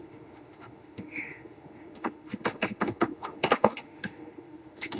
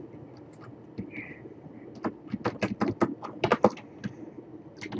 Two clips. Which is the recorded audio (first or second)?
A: second